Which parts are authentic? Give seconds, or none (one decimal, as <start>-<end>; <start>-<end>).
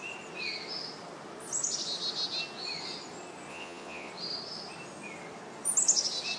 0.0-3.5; 4.1-6.4